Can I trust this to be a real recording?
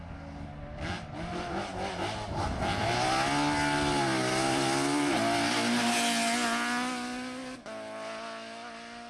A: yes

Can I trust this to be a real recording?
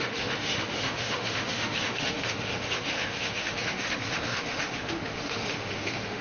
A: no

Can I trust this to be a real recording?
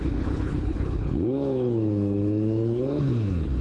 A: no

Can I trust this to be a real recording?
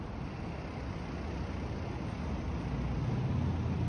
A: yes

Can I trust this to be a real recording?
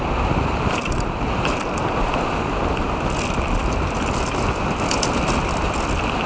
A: yes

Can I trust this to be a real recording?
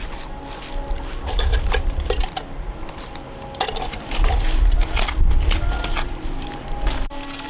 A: yes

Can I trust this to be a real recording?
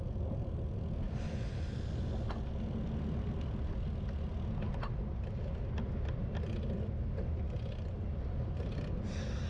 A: yes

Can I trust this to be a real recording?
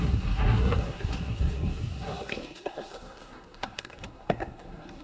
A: no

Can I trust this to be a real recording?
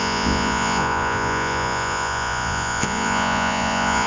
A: no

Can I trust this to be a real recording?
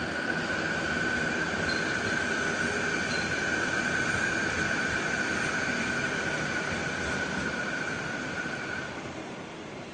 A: yes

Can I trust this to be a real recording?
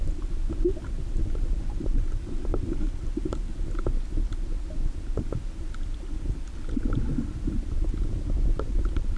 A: yes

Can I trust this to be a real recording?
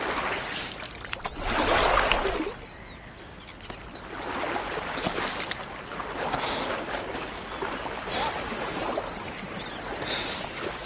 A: yes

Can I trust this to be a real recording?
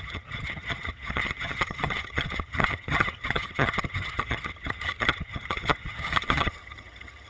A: no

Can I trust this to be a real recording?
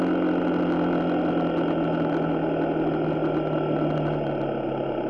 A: yes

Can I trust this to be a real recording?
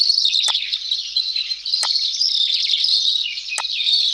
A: yes